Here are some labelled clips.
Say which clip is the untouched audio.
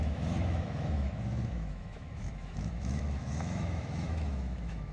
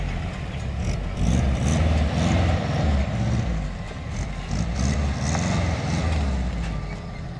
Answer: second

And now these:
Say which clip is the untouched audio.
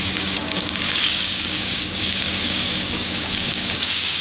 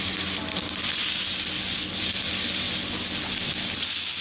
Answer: second